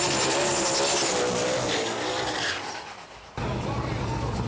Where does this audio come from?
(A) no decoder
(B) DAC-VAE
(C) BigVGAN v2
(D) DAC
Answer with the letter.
A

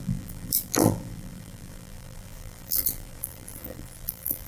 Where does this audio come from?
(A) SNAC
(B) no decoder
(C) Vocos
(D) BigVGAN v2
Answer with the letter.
D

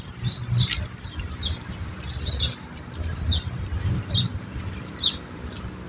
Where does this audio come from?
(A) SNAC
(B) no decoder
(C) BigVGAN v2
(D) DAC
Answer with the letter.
B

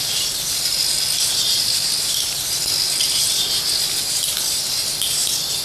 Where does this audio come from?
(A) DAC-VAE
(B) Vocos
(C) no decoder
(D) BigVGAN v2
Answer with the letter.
C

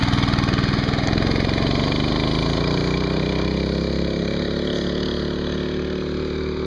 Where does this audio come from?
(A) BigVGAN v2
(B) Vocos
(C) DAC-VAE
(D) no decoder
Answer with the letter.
D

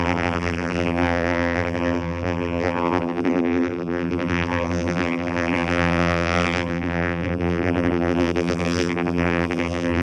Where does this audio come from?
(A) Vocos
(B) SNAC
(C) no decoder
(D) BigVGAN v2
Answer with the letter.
D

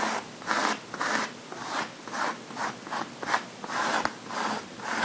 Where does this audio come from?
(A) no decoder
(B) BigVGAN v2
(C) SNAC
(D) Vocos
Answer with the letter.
A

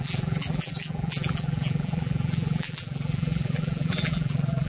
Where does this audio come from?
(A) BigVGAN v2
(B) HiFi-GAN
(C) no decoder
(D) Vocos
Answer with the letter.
A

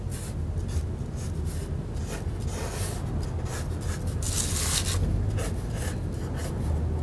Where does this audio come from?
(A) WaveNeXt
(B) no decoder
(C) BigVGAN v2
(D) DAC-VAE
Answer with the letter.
B